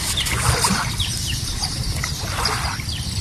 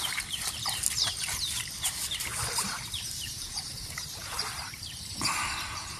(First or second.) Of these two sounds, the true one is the first